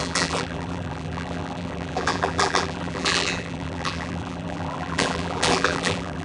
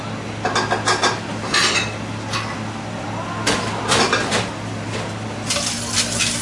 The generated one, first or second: first